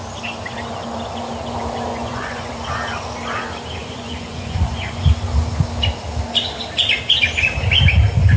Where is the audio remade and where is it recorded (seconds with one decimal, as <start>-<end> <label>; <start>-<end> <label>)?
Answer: 0.0-1.9 recorded; 1.9-2.5 remade; 2.5-3.8 recorded; 3.8-5.1 remade; 5.1-8.4 recorded